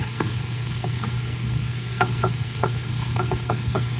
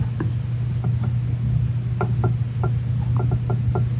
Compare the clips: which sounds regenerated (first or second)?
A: first